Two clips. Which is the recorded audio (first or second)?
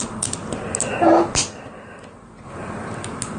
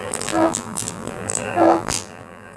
first